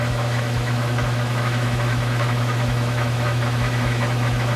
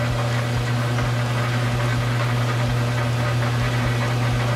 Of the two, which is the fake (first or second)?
first